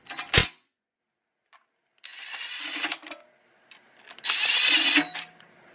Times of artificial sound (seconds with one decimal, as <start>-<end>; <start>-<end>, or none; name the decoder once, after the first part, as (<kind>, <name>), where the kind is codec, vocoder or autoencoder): 0.4-1.0 (vocoder, Vocos)